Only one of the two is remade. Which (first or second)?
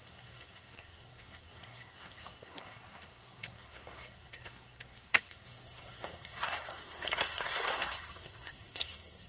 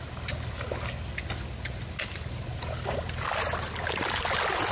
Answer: first